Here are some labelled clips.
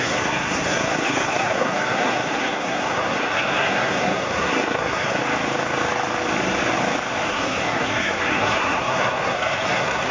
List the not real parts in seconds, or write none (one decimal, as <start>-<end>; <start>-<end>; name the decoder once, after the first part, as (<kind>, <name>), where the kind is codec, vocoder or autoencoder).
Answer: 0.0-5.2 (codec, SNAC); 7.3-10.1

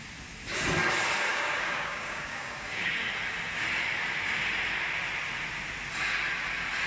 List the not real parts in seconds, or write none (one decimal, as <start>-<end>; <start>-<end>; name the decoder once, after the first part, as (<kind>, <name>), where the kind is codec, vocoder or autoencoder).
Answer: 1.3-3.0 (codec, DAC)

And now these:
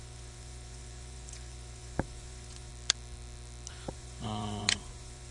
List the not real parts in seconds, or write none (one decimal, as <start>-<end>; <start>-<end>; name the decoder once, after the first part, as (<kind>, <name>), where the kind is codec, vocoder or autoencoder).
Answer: 0.0-2.7 (vocoder, Vocos); 3.7-5.3